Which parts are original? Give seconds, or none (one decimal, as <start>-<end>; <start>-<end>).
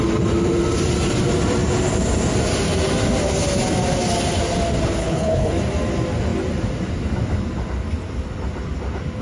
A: 0.0-5.0; 5.5-9.2